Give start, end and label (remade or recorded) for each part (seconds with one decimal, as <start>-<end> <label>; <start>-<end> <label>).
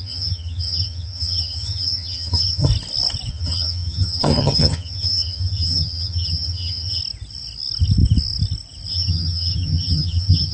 0.0-2.7 remade; 2.7-3.3 recorded; 3.3-7.0 remade; 7.0-8.9 recorded; 8.9-10.5 remade